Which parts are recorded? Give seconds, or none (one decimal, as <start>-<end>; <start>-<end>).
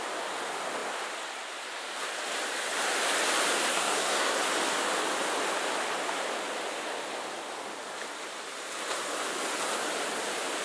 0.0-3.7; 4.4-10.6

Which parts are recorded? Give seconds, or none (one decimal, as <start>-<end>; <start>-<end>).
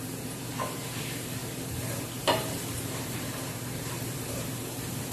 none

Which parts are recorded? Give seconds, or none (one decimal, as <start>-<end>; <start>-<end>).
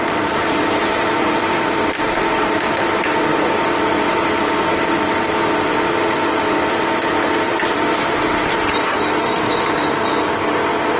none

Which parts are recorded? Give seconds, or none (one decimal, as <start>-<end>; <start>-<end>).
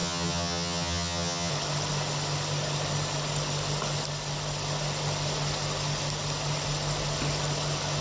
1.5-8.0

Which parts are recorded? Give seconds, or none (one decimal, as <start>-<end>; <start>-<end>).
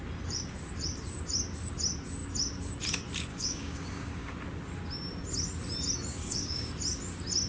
0.0-3.3; 4.3-6.1; 6.7-7.5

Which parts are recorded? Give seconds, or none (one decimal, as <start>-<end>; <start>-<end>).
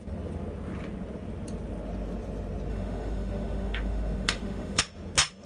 0.0-2.7; 4.8-5.5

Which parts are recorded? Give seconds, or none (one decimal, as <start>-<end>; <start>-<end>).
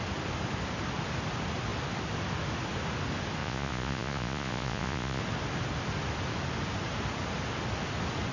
0.0-3.4; 5.2-8.3